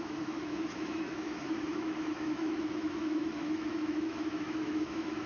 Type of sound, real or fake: fake